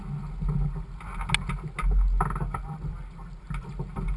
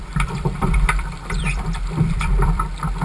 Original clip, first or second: first